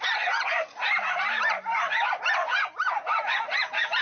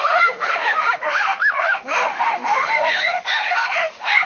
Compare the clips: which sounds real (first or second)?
first